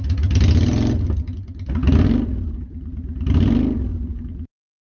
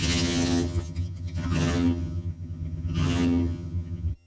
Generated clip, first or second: second